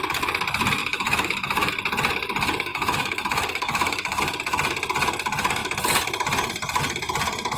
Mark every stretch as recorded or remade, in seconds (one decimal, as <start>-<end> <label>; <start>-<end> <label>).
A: 0.0-0.8 recorded; 0.8-1.7 remade; 1.7-2.7 recorded; 2.7-4.2 remade; 4.2-7.6 recorded